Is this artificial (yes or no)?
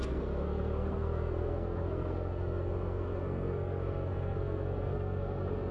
yes